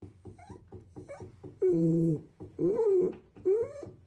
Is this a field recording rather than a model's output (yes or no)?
no